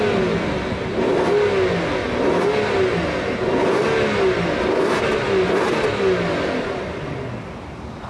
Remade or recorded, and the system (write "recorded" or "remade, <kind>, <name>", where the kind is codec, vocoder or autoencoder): recorded